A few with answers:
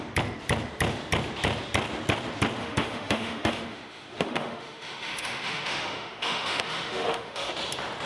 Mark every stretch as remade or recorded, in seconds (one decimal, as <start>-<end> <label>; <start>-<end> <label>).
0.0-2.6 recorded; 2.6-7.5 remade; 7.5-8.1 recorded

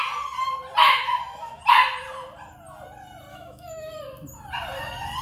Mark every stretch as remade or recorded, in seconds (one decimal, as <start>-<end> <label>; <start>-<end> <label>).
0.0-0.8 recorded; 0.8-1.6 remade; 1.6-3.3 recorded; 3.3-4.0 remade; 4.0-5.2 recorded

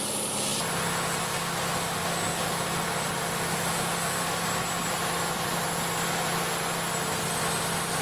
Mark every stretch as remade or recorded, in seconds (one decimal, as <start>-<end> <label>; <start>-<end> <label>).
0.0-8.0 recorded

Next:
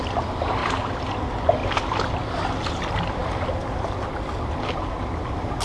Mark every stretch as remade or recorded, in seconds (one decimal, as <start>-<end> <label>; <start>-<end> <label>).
0.0-5.6 recorded